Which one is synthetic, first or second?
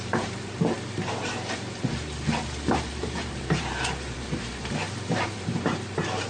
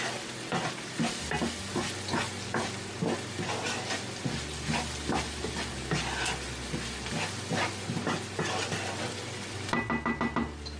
first